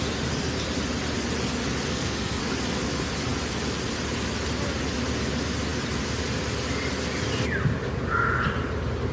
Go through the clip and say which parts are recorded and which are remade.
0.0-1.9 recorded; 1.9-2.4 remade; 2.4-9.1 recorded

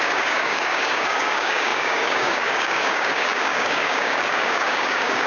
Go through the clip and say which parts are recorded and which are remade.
0.0-5.3 remade

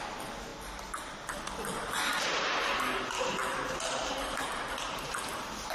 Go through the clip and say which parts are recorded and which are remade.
0.0-5.7 recorded

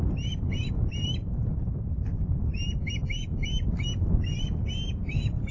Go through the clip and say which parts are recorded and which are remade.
0.0-5.5 recorded

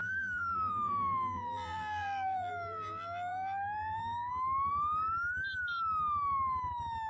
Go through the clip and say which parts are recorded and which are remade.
0.0-4.3 remade; 4.3-7.1 recorded

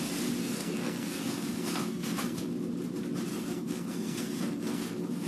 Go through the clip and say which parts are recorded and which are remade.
0.0-0.4 recorded; 0.4-2.5 remade; 2.5-3.3 recorded; 3.3-5.3 remade

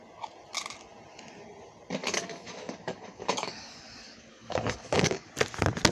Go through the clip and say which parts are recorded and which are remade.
0.0-2.0 recorded; 2.0-5.3 remade; 5.3-5.9 recorded

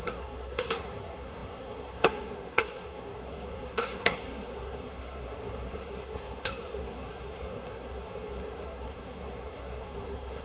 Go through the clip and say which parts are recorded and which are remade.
0.0-10.4 remade